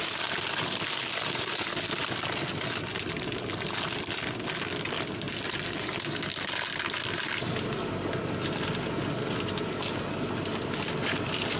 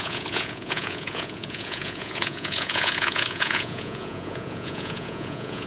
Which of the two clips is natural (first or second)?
first